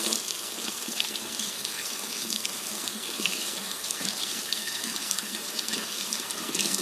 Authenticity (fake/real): fake